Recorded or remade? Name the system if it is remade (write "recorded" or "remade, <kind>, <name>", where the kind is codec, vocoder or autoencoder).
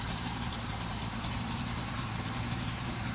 remade, vocoder, BigVGAN v2